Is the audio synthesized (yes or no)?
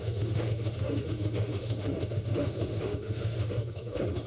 yes